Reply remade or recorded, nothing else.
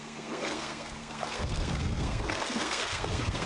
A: remade